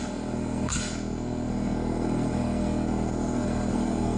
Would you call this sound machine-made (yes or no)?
yes